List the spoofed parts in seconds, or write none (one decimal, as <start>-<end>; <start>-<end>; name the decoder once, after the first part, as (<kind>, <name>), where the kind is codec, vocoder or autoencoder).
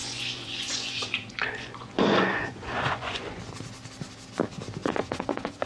0.0-3.4 (vocoder, Vocos); 4.8-5.7